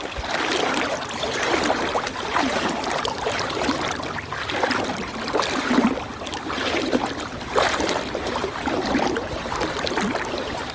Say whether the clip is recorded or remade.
remade